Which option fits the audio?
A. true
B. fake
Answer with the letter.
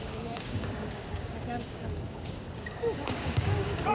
B